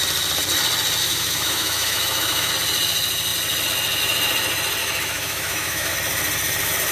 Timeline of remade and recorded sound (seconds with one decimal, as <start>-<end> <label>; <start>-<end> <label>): 0.0-1.0 recorded; 1.0-2.5 remade; 2.5-4.8 recorded; 4.8-5.9 remade; 5.9-6.9 recorded